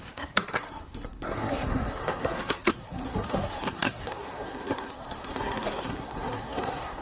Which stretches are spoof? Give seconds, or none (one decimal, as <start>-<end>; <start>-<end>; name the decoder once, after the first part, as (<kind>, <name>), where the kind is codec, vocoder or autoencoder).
0.0-7.0 (codec, SNAC)